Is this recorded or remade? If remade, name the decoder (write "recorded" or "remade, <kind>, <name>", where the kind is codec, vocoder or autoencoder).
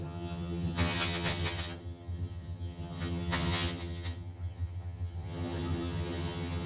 remade, vocoder, HiFi-GAN